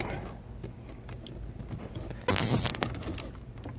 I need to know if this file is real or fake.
real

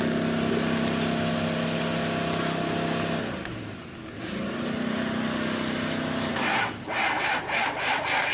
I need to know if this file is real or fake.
real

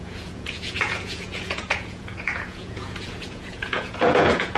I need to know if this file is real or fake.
fake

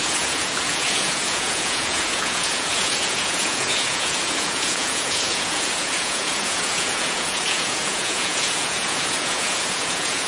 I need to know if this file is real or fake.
fake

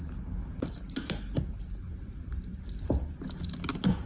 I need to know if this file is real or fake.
real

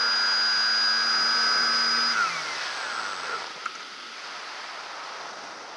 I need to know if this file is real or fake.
real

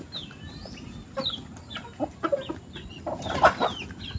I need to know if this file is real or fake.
real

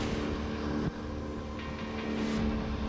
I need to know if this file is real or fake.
real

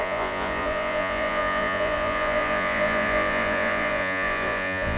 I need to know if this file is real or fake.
fake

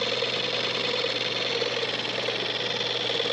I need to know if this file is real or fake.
real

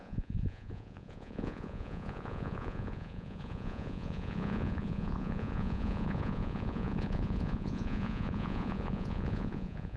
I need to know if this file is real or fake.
fake